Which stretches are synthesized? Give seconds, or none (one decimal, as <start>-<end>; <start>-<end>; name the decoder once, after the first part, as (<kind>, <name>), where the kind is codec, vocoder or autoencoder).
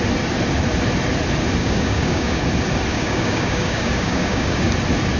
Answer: 1.6-2.4 (codec, DAC); 2.9-4.7